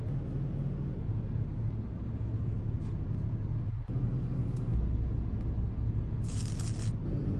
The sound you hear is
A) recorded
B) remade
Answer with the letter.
A